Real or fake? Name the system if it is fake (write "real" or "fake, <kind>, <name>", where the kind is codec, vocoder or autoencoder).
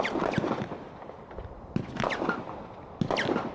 real